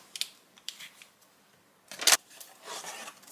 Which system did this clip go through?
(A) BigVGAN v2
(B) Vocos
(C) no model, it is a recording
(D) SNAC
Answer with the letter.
A